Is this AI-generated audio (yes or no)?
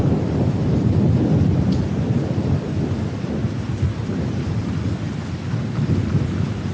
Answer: yes